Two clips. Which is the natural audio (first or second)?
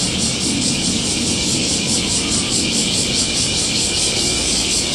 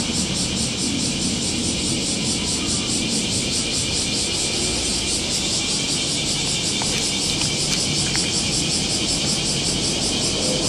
second